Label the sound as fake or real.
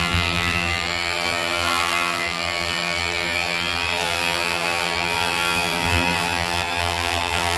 fake